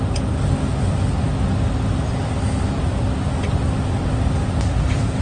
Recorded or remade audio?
recorded